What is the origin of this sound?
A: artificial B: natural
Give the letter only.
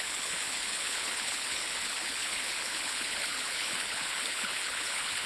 A